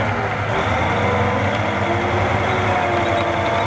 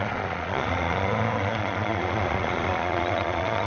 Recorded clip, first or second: first